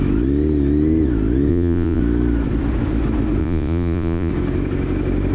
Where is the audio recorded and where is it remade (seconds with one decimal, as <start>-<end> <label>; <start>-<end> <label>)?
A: 0.0-1.5 recorded; 1.5-2.0 remade; 2.0-3.4 recorded; 3.4-4.3 remade; 4.3-5.3 recorded